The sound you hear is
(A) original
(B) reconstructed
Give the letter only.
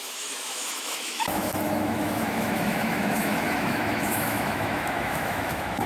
B